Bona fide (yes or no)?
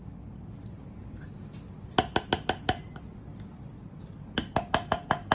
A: yes